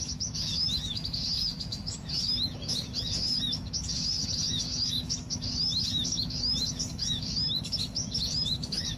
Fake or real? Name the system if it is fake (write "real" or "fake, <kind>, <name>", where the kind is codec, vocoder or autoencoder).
fake, autoencoder, DAC-VAE